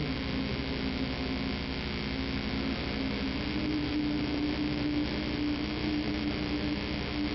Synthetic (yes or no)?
no